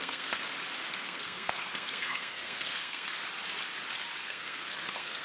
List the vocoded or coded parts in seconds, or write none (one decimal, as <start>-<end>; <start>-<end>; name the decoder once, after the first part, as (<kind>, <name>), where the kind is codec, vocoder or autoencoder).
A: 0.0-0.4 (codec, SNAC); 0.9-3.2; 4.2-5.2